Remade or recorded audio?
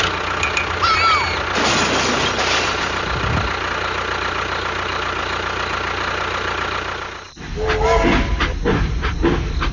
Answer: recorded